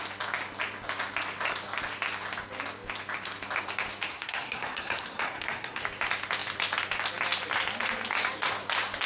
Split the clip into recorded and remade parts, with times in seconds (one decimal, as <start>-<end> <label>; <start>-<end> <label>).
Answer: 0.0-4.1 recorded; 4.1-5.8 remade; 5.8-9.1 recorded